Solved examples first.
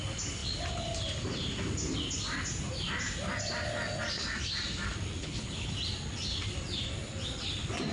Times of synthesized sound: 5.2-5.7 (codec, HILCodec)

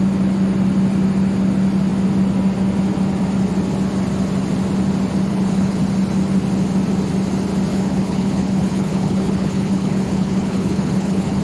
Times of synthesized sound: 5.3-5.8 (codec, HILCodec); 7.7-11.4

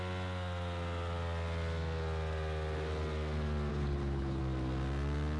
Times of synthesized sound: 3.7-4.4 (codec, HILCodec)

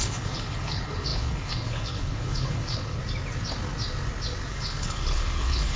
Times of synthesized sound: 0.0-3.0 (codec, HILCodec); 4.5-5.8

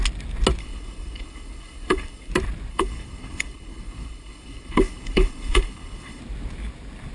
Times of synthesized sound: 0.6-2.3 (codec, HILCodec); 2.7-6.2

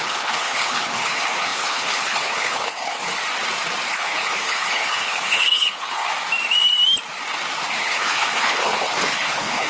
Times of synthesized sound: 0.0-3.1 (codec, HILCodec); 3.9-6.1; 7.7-9.7

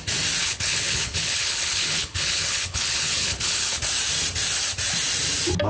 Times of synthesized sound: 0.4-3.8 (codec, HILCodec)